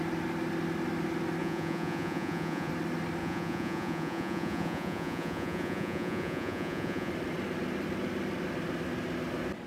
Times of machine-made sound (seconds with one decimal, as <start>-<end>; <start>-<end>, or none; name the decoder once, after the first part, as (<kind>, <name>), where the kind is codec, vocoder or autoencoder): 1.4-2.7 (vocoder, Vocos); 3.2-7.1